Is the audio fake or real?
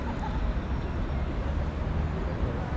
real